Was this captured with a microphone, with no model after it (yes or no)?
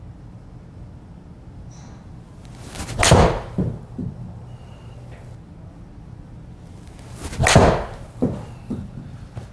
yes